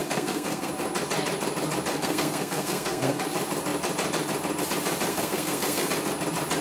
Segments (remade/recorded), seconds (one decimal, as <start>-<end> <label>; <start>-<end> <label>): 0.0-0.7 remade; 0.7-1.9 recorded; 1.9-3.2 remade; 3.2-5.1 recorded; 5.1-5.9 remade; 5.9-6.6 recorded

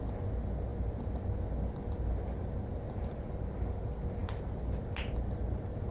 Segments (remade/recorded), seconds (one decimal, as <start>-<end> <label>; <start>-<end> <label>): 0.0-5.9 recorded